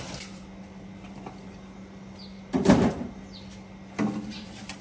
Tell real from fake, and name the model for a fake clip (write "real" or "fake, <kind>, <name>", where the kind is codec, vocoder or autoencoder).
real